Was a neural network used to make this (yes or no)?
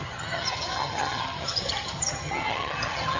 yes